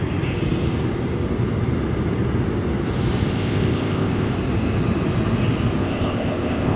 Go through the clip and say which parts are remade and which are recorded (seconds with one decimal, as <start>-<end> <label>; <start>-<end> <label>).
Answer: 0.0-3.3 recorded; 3.3-4.3 remade; 4.3-5.8 recorded; 5.8-6.8 remade